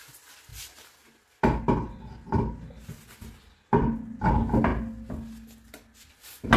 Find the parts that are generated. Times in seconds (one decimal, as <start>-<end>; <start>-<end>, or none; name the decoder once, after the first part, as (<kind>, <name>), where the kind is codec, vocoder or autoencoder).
0.5-1.6 (vocoder, BigVGAN v2)